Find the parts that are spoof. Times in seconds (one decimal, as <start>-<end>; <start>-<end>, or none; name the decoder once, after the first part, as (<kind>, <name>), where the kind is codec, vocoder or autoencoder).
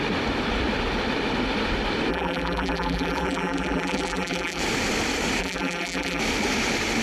2.1-4.6 (vocoder, BigVGAN v2); 5.4-6.2